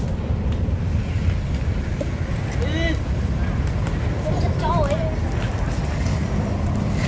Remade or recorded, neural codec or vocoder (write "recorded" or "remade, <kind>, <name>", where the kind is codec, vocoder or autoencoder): recorded